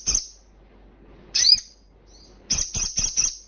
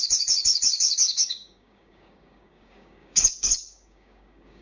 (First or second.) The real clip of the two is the first